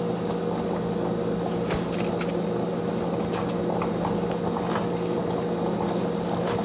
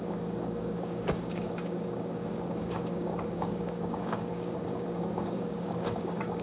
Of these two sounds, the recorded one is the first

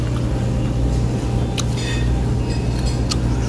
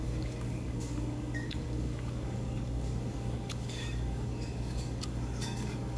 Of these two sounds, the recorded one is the first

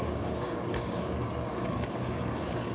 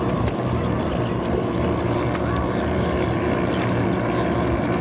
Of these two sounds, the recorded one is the second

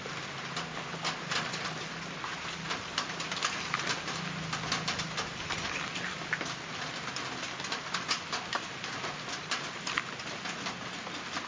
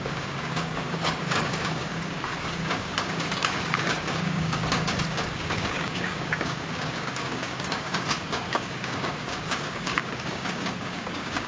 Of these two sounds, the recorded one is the first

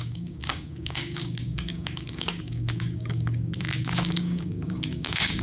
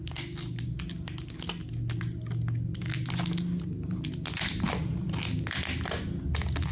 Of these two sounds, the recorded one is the second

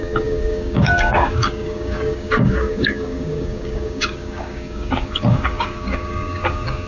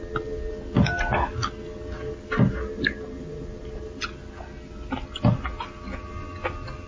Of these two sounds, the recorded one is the second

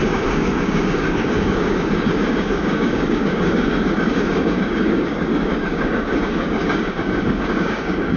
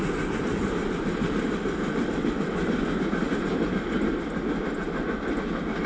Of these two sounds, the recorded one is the second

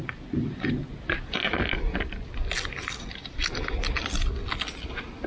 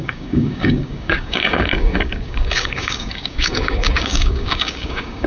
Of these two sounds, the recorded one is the first